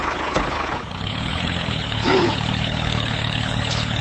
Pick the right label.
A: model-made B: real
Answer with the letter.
A